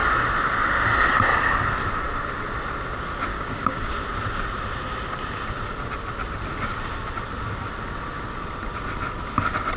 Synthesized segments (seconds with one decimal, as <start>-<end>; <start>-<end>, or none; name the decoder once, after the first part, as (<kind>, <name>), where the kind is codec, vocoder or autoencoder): 3.3-3.9 (codec, DAC)